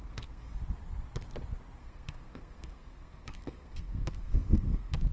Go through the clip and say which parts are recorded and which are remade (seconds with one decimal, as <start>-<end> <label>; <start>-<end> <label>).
0.0-0.5 remade; 0.5-1.8 recorded; 1.8-5.1 remade